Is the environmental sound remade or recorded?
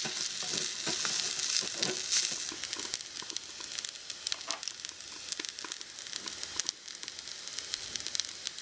recorded